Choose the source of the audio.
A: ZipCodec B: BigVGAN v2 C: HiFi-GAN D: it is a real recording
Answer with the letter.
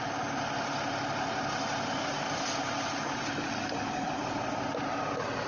D